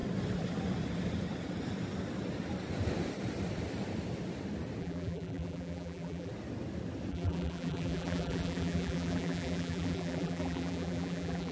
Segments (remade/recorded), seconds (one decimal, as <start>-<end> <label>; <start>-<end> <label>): 0.0-4.8 recorded; 4.8-6.3 remade; 6.3-7.1 recorded; 7.1-11.5 remade